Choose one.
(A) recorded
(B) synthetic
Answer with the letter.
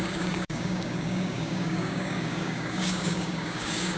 B